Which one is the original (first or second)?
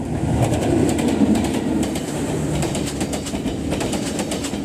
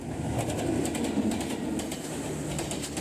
second